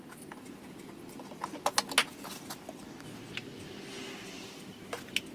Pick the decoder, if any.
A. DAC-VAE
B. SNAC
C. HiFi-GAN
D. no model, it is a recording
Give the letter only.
D